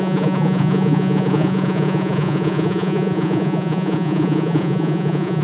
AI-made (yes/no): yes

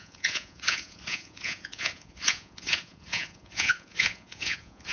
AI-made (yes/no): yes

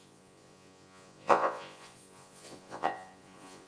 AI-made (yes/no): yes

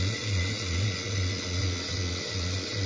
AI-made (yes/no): yes